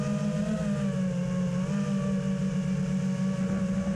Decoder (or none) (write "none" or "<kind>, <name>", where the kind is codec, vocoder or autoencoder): none